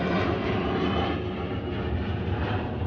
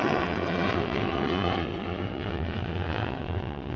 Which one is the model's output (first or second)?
second